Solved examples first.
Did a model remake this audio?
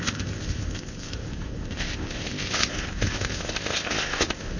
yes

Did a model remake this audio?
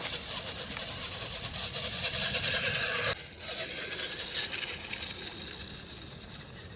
no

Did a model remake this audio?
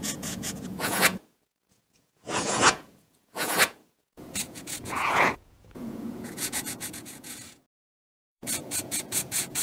yes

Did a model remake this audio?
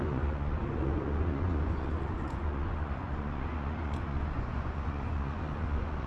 yes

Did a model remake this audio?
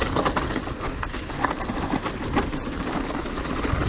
no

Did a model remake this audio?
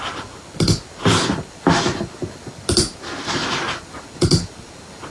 no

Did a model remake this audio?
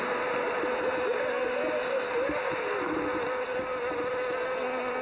no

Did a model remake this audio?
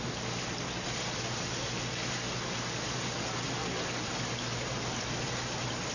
no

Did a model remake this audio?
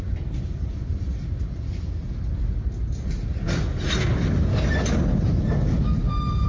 no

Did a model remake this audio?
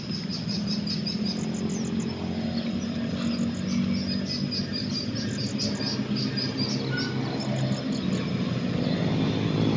no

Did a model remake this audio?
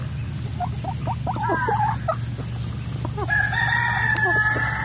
no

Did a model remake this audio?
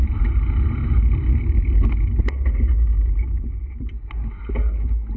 no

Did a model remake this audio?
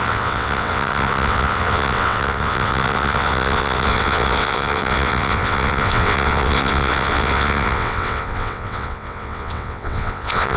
yes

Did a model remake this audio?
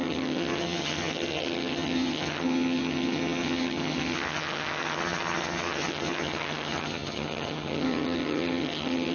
yes